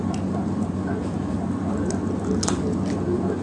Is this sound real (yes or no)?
yes